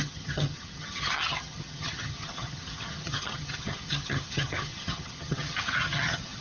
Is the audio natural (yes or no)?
no